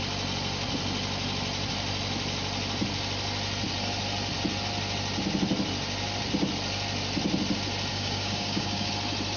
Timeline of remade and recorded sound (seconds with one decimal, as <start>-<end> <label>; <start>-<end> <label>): 0.0-7.9 recorded; 7.9-8.9 remade; 8.9-9.4 recorded

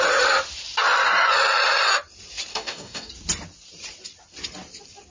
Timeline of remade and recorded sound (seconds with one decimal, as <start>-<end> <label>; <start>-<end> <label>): 0.0-2.5 recorded; 2.5-3.1 remade; 3.1-5.1 recorded

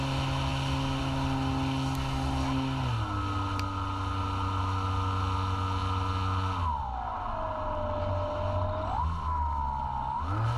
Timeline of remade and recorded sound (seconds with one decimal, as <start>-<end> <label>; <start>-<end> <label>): 0.0-10.6 recorded

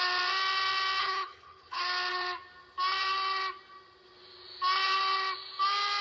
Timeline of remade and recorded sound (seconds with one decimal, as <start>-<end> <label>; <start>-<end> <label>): 0.0-1.0 recorded; 1.0-1.8 remade; 1.8-6.0 recorded

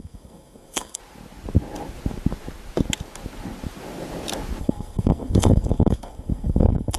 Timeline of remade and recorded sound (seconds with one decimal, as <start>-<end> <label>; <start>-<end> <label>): 0.0-1.0 remade; 1.0-4.6 recorded; 4.6-7.0 remade